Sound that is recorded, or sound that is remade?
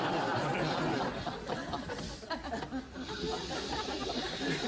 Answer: recorded